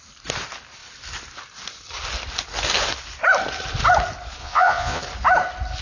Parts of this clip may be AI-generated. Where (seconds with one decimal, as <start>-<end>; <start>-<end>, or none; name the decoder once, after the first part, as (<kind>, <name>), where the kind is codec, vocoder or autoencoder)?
4.4-5.0 (vocoder, Vocos)